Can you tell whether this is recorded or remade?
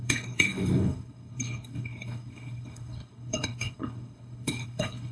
remade